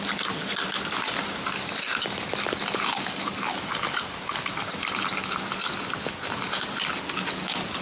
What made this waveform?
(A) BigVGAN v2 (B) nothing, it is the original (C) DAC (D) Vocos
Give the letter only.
B